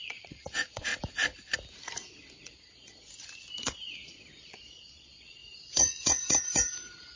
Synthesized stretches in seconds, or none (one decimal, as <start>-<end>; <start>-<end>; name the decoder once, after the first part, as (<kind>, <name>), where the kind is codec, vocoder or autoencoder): 0.0-0.9 (vocoder, Vocos); 2.4-7.2